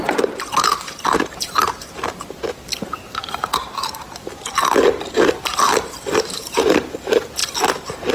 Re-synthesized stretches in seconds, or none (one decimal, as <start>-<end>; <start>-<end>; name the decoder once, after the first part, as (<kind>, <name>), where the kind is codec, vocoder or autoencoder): 0.0-0.7 (vocoder, BigVGAN v2); 4.8-7.4